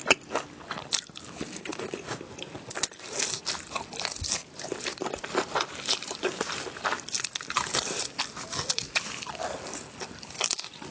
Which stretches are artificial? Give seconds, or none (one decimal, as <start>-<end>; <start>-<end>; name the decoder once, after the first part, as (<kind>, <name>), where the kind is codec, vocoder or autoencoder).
4.4-8.0 (vocoder, BigVGAN v2)